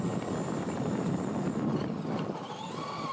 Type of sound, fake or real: real